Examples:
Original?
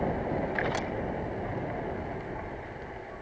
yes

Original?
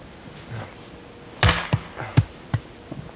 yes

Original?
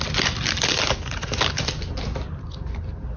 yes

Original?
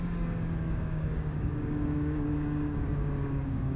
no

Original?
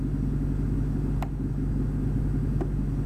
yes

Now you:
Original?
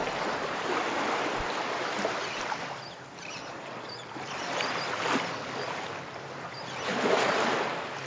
yes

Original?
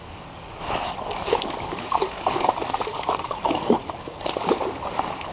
no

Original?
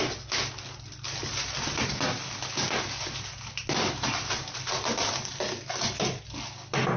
yes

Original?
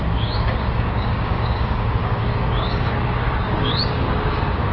no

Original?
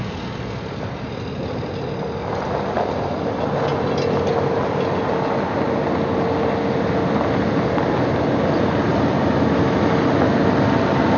yes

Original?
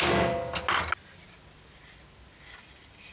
yes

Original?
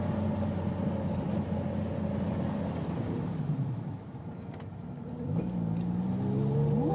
yes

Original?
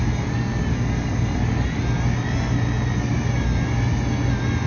yes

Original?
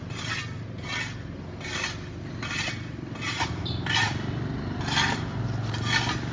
yes